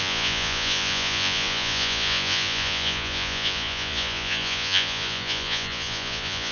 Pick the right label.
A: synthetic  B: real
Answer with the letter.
A